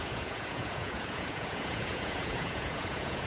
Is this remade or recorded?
remade